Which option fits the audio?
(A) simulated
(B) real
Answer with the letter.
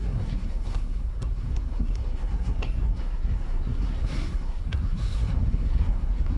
A